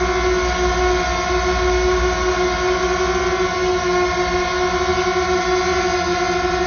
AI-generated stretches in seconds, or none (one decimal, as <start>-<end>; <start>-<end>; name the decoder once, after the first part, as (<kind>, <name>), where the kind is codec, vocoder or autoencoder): none